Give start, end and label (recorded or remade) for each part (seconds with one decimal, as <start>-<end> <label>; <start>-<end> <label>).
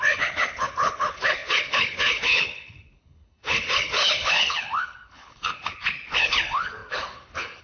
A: 0.0-7.6 remade